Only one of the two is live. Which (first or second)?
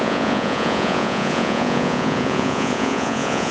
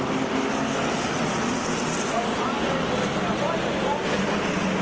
second